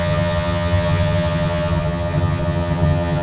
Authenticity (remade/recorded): remade